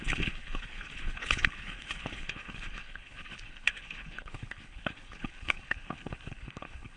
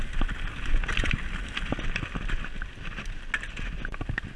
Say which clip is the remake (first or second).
first